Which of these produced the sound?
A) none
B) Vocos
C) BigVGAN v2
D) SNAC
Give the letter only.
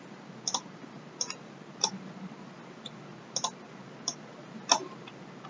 A